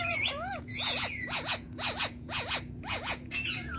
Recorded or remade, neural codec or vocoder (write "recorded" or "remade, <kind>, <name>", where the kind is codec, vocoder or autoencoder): remade, vocoder, Vocos